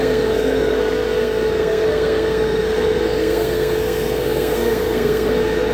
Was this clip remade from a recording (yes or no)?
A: yes